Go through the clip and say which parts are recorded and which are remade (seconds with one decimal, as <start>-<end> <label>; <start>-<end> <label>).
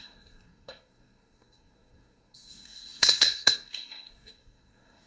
0.0-5.1 remade